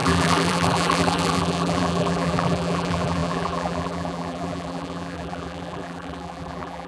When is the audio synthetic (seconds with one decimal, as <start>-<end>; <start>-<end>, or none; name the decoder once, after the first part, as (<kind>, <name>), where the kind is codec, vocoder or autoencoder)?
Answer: 0.0-6.9 (vocoder, BigVGAN v2)